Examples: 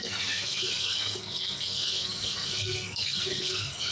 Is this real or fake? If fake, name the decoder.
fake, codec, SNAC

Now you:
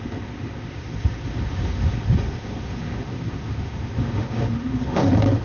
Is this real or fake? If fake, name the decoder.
fake, autoencoder, DAC-VAE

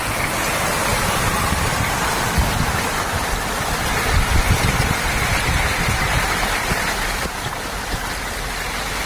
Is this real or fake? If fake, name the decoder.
real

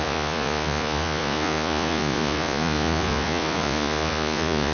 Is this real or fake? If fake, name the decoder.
fake, vocoder, Vocos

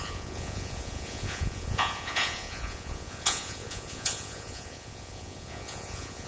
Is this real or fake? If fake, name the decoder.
fake, vocoder, Vocos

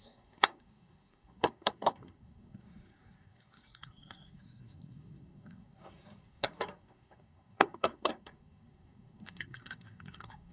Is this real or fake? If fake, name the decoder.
fake, codec, SNAC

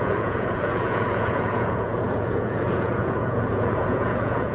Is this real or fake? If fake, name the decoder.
fake, vocoder, Vocos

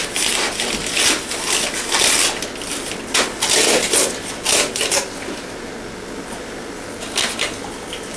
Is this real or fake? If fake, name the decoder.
real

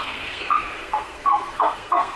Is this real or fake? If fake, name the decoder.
fake, codec, SNAC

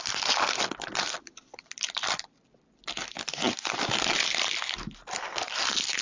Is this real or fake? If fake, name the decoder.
fake, vocoder, BigVGAN v2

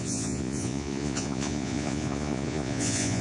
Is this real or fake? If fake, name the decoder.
fake, vocoder, Vocos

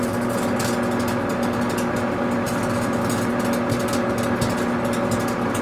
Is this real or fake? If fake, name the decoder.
real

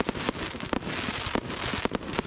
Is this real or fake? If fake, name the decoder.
real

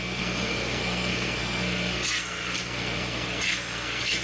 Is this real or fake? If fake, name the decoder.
fake, codec, SNAC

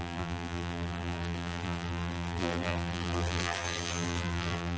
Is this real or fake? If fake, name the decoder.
fake, vocoder, BigVGAN v2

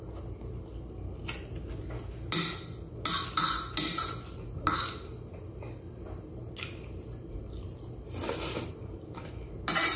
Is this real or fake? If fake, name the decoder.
real